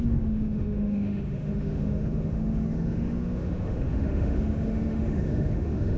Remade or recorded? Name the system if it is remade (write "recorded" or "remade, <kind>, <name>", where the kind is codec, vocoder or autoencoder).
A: remade, autoencoder, DAC-VAE